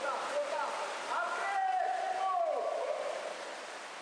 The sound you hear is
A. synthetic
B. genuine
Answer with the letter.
B